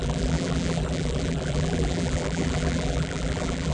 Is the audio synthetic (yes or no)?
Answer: yes